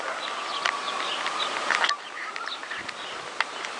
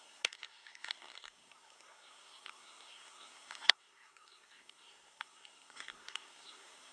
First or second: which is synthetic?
second